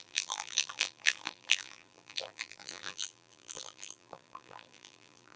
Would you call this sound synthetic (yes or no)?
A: yes